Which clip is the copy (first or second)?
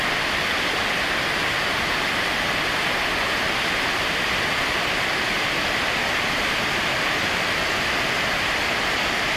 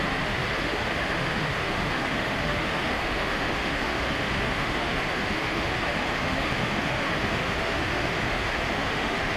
second